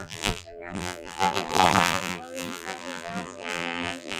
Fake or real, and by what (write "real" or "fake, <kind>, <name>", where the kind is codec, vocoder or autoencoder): fake, vocoder, BigVGAN v2